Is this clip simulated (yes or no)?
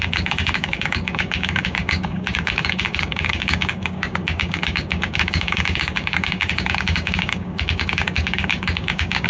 yes